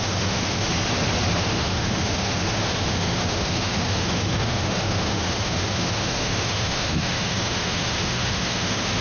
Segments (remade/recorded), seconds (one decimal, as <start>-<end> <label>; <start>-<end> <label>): 0.0-0.7 remade; 0.7-1.4 recorded; 1.4-9.0 remade